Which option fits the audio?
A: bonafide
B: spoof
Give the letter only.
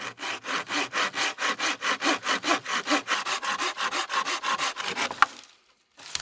A